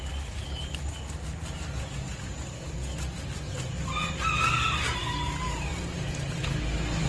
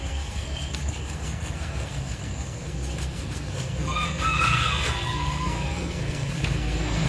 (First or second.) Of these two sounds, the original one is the first